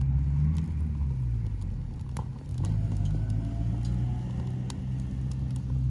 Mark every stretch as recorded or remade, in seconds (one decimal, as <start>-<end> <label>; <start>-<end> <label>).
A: 0.0-5.9 recorded